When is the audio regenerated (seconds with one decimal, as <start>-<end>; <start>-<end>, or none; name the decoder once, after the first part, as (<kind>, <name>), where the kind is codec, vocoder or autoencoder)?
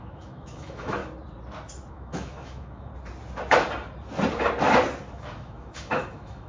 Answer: 0.0-1.0 (autoencoder, DAC-VAE); 1.9-2.9; 5.1-6.5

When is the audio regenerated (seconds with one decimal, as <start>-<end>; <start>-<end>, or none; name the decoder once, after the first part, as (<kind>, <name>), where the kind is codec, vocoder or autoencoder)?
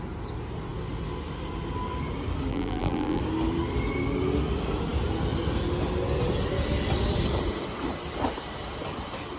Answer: 2.5-3.2 (vocoder, BigVGAN v2)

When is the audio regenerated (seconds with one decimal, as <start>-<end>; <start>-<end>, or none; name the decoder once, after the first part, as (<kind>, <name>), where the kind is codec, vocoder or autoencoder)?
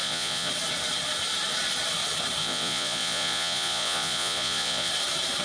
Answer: 0.0-0.5 (vocoder, Vocos); 2.4-4.9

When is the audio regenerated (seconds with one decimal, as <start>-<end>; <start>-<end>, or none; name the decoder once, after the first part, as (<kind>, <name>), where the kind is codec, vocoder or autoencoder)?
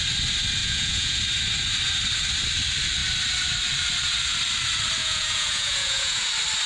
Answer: 0.6-1.2 (vocoder, Vocos); 5.0-6.3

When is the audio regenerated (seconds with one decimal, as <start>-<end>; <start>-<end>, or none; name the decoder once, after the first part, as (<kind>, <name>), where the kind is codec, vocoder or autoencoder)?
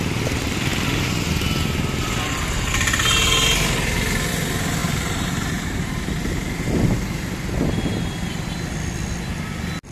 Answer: 4.8-5.9 (vocoder, BigVGAN v2)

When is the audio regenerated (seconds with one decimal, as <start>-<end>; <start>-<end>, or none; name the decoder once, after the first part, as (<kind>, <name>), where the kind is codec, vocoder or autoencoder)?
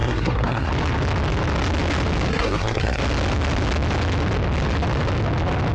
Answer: 0.0-0.7 (codec, SNAC); 2.3-3.0